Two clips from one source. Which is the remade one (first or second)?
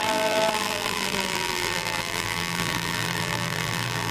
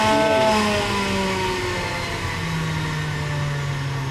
first